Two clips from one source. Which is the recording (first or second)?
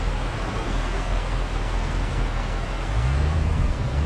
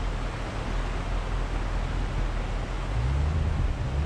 second